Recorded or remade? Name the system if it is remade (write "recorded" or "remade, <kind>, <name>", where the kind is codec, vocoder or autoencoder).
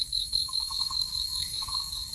remade, codec, SNAC